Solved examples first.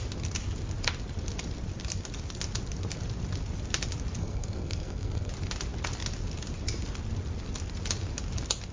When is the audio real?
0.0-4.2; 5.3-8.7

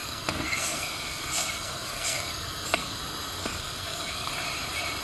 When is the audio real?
3.0-3.4; 4.3-5.0

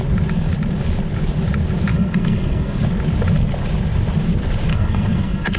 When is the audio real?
0.0-1.9; 2.8-4.7

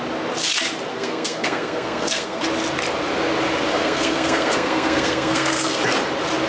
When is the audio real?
0.0-0.9; 2.4-3.7; 5.8-6.5

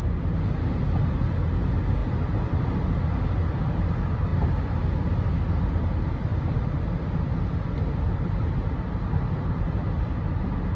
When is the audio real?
0.0-10.8

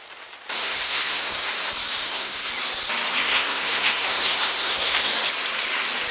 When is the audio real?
0.0-0.6; 1.5-2.0; 2.5-3.2; 5.1-6.1